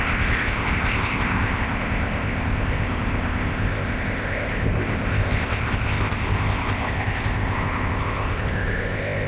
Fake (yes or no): yes